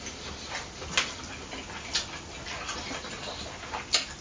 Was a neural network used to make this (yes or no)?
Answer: no